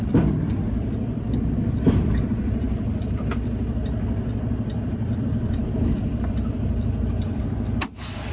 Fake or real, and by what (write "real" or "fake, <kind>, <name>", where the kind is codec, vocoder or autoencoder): fake, vocoder, BigVGAN v2